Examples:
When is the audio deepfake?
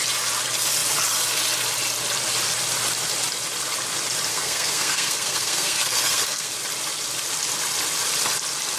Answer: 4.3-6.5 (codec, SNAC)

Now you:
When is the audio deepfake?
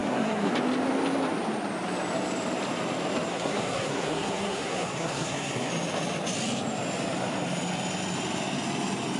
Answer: 0.0-0.5 (codec, SNAC); 3.3-5.7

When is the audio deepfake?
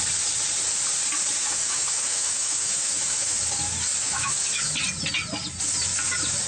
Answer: 1.4-3.4 (autoencoder, DAC-VAE); 4.0-4.7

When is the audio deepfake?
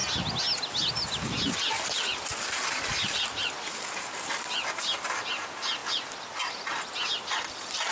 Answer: none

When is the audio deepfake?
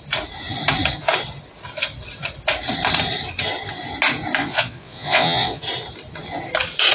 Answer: 4.4-5.6 (vocoder, Vocos)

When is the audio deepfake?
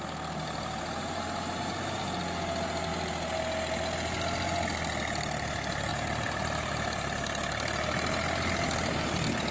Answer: 1.0-2.0 (vocoder, BigVGAN v2); 5.9-6.7